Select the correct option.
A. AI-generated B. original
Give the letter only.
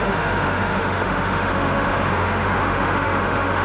A